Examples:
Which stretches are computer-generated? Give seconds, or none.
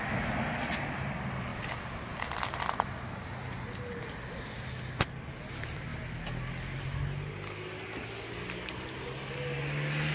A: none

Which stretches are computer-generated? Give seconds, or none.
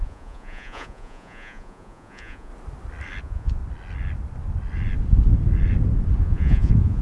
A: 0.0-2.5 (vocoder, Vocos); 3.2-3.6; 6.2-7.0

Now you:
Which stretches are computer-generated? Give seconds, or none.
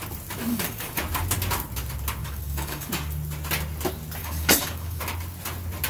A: 0.5-1.0 (codec, DAC); 2.2-2.9; 4.2-5.0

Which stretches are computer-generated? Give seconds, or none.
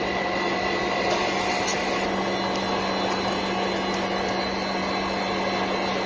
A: none